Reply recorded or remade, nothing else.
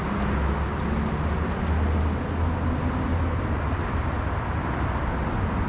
recorded